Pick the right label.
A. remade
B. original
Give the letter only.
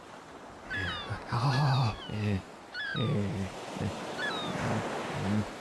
B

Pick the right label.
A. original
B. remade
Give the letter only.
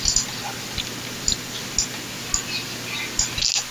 A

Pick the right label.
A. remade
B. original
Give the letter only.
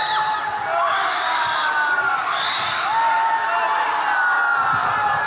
B